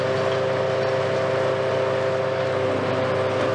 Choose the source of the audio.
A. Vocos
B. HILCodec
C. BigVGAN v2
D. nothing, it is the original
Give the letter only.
D